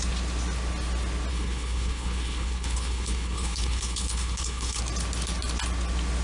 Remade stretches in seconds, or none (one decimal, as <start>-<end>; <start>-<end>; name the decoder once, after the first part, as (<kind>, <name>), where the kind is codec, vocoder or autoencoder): 1.3-4.8 (codec, HILCodec)